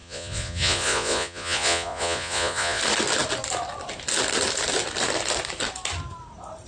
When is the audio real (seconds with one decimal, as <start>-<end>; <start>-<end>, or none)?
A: 2.8-6.7